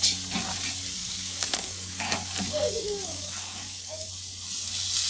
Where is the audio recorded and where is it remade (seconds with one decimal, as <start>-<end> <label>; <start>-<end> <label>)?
0.0-1.0 recorded; 1.0-4.1 remade; 4.1-5.1 recorded